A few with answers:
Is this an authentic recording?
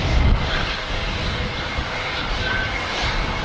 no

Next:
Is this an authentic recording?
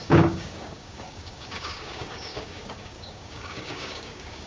no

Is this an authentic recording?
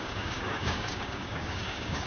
no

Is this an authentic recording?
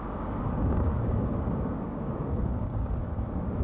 no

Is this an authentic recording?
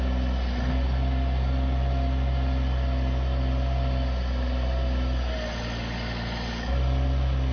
yes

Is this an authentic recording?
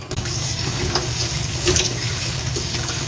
no